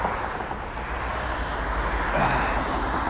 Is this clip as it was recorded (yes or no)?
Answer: yes